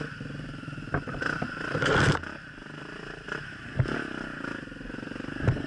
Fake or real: real